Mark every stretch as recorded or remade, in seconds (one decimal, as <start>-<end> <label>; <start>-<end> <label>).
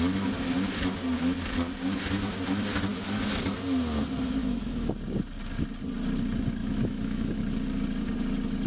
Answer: 0.0-4.4 recorded; 4.4-4.9 remade; 4.9-6.6 recorded; 6.6-7.4 remade; 7.4-8.7 recorded